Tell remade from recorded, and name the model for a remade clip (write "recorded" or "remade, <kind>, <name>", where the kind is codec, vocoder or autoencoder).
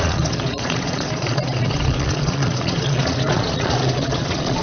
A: remade, vocoder, Vocos